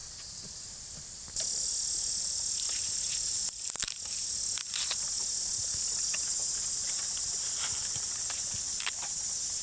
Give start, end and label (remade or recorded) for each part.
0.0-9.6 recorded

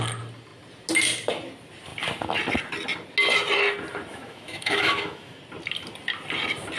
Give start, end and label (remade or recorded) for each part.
0.0-4.1 recorded; 4.1-5.4 remade; 5.4-6.8 recorded